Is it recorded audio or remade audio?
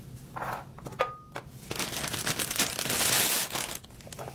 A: recorded